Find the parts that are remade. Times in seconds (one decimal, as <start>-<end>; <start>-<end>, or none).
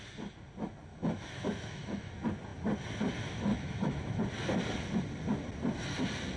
0.9-2.1; 3.5-4.2